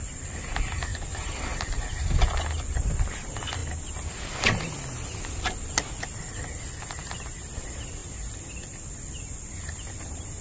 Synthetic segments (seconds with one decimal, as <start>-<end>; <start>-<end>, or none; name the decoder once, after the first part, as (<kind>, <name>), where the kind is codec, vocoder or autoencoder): none